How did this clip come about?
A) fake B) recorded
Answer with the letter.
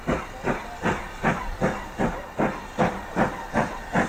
B